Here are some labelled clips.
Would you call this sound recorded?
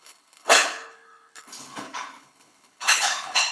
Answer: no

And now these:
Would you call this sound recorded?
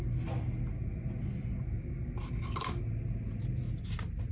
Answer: yes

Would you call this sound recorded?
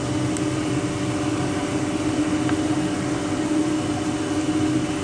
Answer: yes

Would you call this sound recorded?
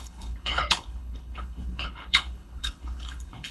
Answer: no